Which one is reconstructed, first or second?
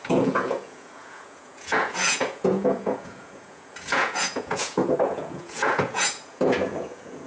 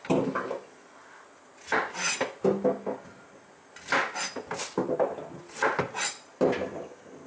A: first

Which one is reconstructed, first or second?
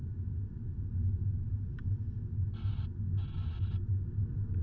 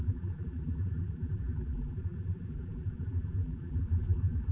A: second